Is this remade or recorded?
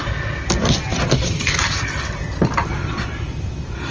remade